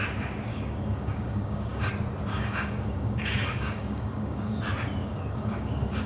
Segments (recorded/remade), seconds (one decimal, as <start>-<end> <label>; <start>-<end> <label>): 0.0-0.5 recorded; 0.5-1.9 remade; 1.9-2.3 recorded; 2.3-4.6 remade; 4.6-5.0 recorded; 5.0-6.1 remade